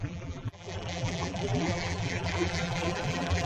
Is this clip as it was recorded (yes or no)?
no